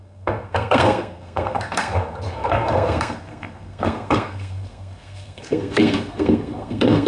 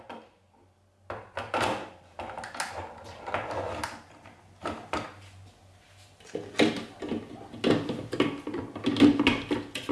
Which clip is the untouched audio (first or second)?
second